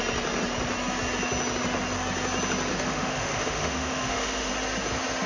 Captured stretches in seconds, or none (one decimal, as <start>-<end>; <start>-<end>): 0.0-2.7; 4.5-5.3